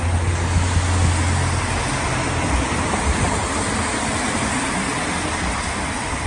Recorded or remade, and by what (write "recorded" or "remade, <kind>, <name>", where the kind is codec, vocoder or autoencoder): recorded